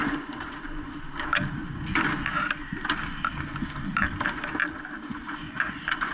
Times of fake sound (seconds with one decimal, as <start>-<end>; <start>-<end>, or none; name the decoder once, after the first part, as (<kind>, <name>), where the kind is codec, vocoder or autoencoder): 0.0-0.9 (vocoder, Vocos); 5.1-6.1